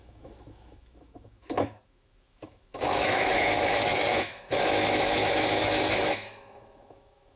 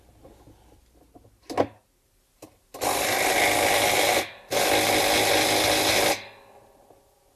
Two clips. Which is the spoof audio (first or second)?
first